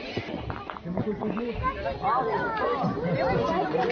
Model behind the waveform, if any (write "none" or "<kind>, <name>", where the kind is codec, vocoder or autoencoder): none